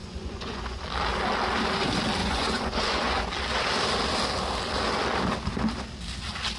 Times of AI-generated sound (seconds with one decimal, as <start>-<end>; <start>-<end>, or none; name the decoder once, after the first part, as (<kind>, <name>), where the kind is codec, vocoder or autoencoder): 0.0-0.8 (vocoder, Vocos); 2.2-3.3